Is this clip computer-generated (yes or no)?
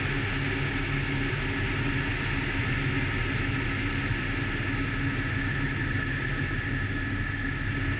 no